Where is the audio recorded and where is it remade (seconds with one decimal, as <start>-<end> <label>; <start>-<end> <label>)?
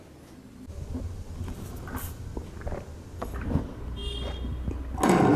0.0-5.4 recorded